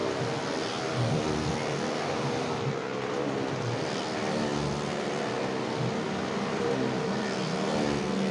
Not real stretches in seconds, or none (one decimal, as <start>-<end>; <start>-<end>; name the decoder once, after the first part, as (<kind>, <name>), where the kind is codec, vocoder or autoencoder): none